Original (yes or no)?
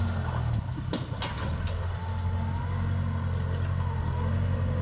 yes